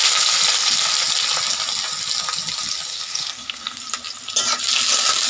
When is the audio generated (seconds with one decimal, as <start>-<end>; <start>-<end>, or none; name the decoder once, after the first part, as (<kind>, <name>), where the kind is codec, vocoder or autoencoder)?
2.9-3.8 (codec, SNAC)